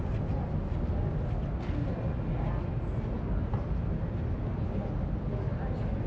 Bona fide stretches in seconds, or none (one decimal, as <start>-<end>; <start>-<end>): 0.0-6.1